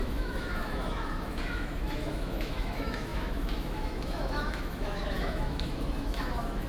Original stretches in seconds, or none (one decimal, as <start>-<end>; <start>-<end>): none